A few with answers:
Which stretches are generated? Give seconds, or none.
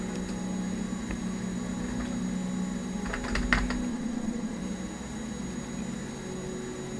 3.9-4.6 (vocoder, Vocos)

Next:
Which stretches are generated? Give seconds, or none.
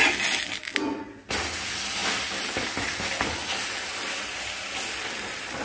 none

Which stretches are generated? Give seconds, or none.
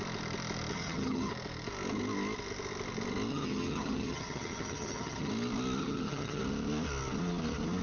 0.7-1.3 (vocoder, HiFi-GAN); 3.3-5.3; 5.8-6.4